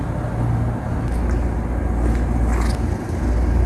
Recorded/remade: recorded